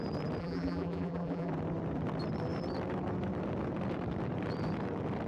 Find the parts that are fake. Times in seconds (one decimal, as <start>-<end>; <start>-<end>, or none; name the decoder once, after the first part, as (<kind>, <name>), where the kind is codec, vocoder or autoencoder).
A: 0.4-1.5 (vocoder, BigVGAN v2)